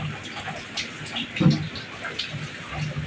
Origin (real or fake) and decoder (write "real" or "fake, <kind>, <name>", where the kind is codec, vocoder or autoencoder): real